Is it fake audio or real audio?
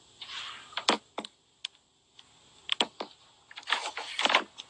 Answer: real